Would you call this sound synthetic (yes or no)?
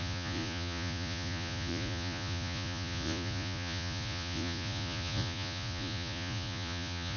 yes